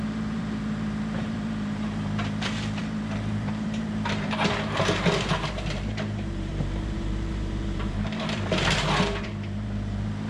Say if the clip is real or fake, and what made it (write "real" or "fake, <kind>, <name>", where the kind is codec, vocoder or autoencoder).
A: fake, vocoder, BigVGAN v2